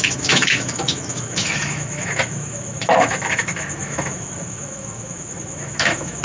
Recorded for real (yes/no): no